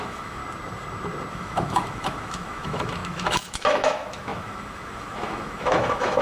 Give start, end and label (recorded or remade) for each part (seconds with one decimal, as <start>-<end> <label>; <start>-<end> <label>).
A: 0.0-0.4 remade; 0.4-1.3 recorded; 1.3-6.2 remade